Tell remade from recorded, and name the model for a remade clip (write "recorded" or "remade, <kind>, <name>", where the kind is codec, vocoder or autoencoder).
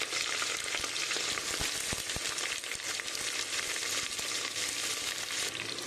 remade, vocoder, BigVGAN v2